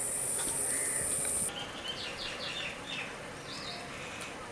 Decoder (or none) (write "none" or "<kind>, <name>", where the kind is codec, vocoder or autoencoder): none